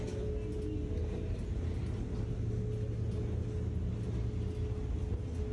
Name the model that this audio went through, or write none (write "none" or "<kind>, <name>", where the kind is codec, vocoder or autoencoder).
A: none